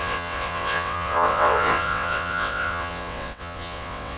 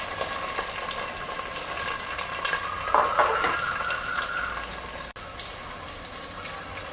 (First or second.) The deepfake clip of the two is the first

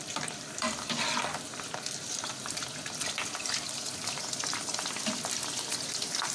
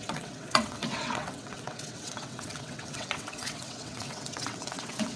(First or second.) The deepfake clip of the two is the second